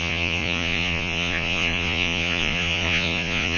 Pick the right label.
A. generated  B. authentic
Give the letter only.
A